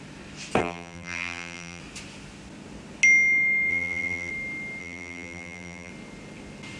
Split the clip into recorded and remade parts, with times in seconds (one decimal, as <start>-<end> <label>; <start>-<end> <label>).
0.0-0.6 recorded; 0.6-1.8 remade; 1.8-3.7 recorded; 3.7-4.3 remade; 4.3-4.8 recorded; 4.8-5.9 remade; 5.9-6.8 recorded